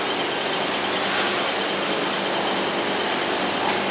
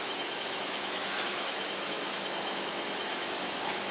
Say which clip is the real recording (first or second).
first